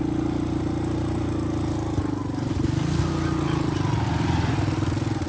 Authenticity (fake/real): real